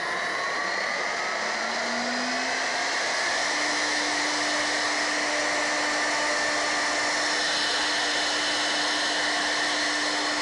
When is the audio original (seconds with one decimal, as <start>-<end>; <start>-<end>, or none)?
0.0-3.4; 4.2-10.4